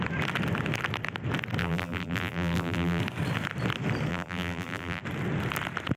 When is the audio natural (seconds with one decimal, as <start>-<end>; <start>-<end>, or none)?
0.0-1.6; 3.0-4.1; 5.0-6.0